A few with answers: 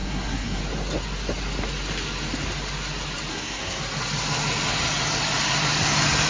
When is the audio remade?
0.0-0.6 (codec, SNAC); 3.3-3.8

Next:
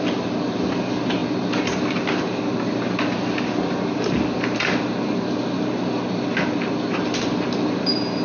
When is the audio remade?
none

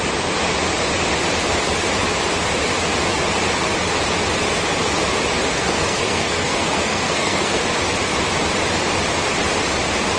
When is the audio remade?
5.5-7.6 (codec, SNAC)